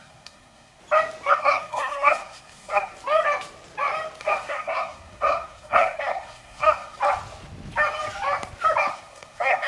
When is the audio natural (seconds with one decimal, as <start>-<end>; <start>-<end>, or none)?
0.8-1.3; 2.9-4.2; 7.0-8.9